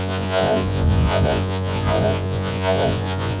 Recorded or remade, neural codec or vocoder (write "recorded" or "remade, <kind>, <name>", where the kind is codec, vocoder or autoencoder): remade, vocoder, Vocos